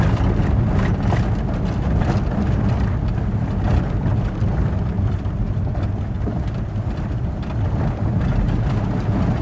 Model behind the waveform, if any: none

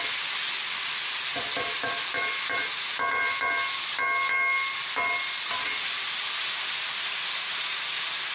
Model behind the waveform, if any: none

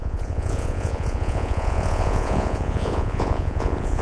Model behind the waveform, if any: vocoder, Vocos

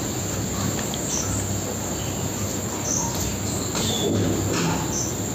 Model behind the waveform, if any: none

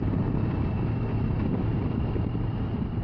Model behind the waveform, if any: none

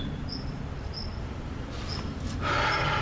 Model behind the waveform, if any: none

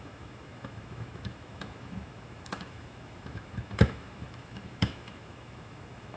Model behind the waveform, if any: autoencoder, DAC-VAE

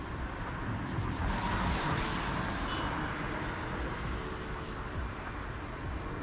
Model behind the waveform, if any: none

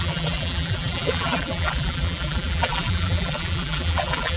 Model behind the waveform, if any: vocoder, BigVGAN v2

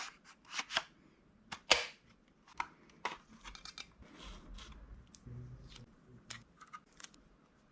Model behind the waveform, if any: none